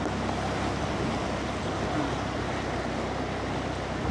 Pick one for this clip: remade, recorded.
recorded